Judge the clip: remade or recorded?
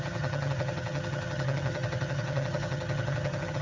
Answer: remade